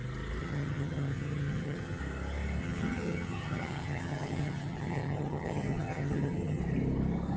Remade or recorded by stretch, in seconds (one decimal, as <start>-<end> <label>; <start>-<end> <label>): 0.0-0.4 recorded; 0.4-2.0 remade; 2.0-2.6 recorded; 2.6-6.6 remade; 6.6-7.4 recorded